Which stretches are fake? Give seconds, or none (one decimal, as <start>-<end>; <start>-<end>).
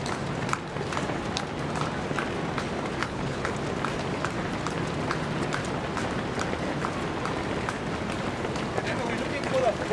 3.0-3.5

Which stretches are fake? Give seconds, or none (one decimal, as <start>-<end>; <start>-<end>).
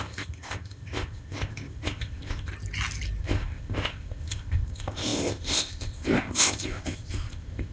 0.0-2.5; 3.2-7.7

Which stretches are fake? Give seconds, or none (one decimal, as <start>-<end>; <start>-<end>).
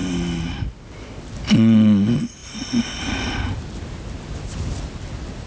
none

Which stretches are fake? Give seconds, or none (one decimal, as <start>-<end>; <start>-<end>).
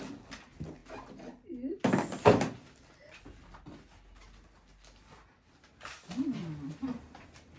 none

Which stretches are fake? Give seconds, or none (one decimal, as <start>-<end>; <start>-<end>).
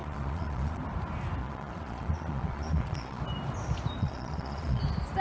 0.0-0.8; 1.4-3.2; 4.0-4.8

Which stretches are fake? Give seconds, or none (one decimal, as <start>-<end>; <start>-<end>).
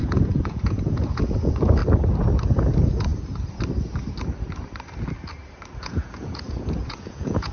0.0-1.8; 2.6-3.1; 5.8-7.5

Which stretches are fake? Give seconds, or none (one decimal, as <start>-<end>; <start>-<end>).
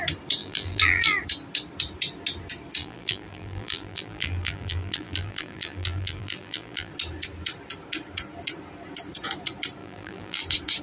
0.4-1.2; 2.8-6.9; 9.8-10.4